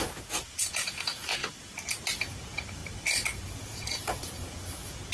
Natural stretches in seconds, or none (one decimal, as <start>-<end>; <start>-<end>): 1.4-2.1; 2.8-3.5